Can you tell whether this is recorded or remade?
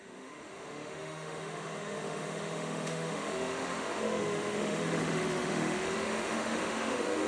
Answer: remade